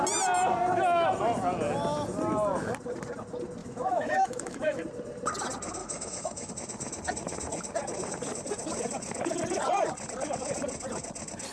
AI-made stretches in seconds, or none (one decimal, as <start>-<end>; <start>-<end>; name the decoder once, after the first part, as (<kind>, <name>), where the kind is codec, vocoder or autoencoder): 3.6-4.8 (autoencoder, DAC-VAE); 5.8-6.5